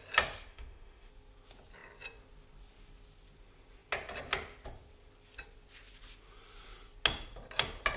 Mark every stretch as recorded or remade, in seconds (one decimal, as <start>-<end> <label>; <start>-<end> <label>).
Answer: 0.0-0.5 recorded; 0.5-1.1 remade; 1.1-8.0 recorded